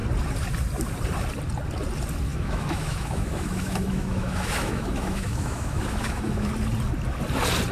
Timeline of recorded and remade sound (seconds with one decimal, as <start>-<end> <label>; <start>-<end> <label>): 0.0-2.3 recorded; 2.3-6.5 remade; 6.5-7.7 recorded